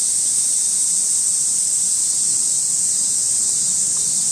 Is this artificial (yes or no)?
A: no